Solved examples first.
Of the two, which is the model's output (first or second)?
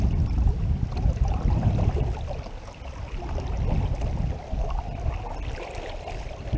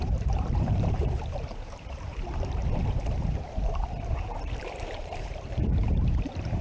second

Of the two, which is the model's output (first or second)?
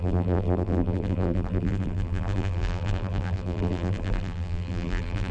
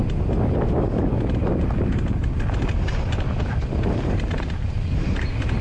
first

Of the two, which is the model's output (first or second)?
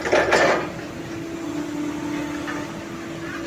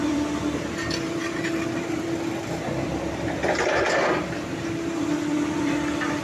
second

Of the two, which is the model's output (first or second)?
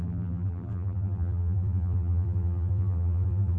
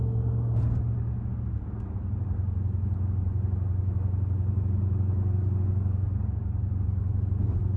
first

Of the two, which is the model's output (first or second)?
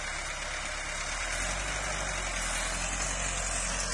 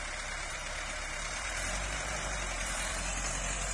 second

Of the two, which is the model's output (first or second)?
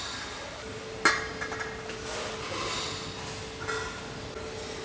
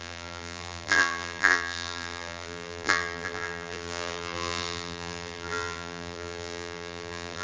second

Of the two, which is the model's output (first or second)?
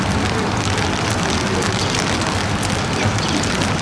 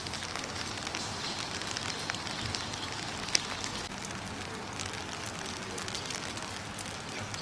first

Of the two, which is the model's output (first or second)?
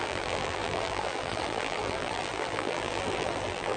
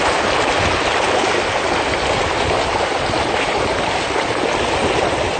first